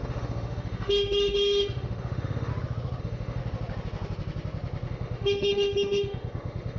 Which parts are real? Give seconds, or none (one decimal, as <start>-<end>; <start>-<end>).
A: 2.5-3.0; 3.4-4.9